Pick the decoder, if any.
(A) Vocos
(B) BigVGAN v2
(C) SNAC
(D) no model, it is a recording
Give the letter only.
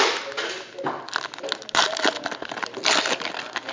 D